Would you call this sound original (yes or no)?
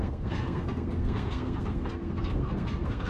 no